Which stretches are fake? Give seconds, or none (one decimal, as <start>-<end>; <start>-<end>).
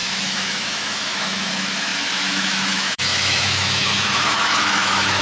0.0-5.2